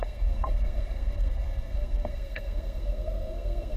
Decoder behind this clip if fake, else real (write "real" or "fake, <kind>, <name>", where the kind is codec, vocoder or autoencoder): fake, codec, SNAC